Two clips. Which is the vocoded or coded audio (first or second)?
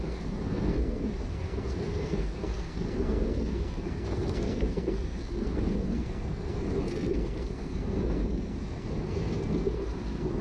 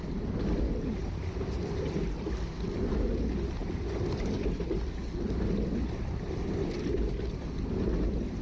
first